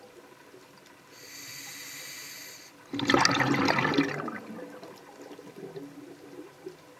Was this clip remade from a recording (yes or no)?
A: no